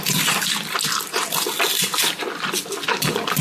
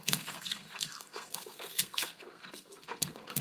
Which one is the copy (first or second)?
second